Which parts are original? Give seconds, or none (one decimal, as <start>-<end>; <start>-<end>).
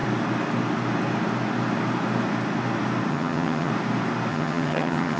0.0-3.1; 3.7-4.3